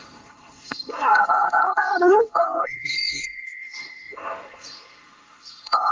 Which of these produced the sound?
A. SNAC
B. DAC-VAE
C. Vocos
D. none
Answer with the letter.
A